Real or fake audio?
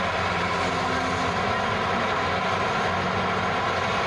real